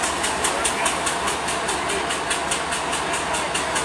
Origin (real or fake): real